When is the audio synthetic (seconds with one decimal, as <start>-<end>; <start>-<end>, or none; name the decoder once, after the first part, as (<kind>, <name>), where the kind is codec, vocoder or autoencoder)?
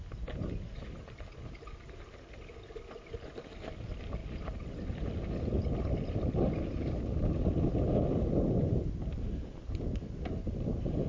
none